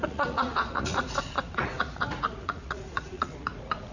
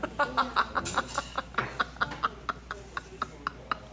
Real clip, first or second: second